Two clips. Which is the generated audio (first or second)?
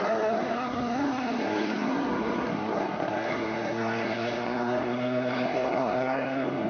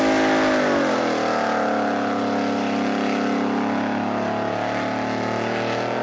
first